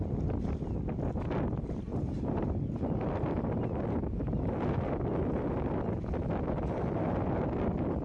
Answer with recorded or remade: recorded